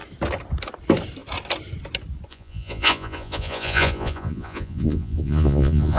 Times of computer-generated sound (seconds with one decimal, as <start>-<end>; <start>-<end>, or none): 2.3-6.0